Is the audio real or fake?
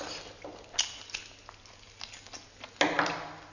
real